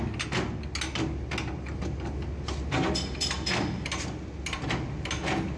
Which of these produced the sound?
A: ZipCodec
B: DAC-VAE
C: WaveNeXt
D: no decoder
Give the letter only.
D